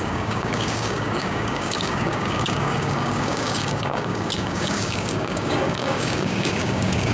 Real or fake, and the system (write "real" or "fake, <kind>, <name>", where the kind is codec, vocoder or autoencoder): fake, codec, DAC